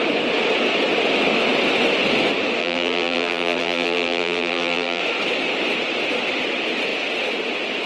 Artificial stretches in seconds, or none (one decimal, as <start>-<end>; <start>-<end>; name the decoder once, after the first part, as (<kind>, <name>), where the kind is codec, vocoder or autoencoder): 2.6-5.0 (vocoder, BigVGAN v2)